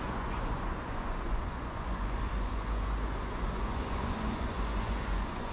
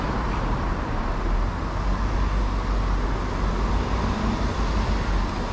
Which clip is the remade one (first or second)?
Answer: first